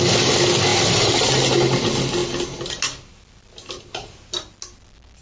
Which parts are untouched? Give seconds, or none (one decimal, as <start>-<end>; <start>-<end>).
0.0-5.2